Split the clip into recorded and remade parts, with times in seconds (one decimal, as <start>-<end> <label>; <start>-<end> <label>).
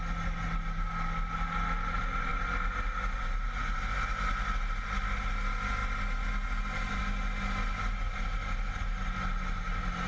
0.0-10.1 recorded